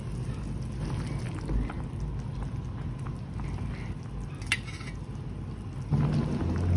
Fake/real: real